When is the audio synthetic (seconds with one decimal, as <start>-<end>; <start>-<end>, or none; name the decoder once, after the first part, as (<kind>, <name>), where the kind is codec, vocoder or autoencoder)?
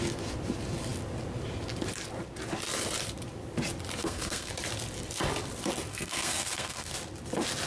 4.0-4.5 (codec, SNAC); 5.9-6.9